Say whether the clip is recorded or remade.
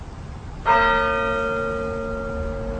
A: recorded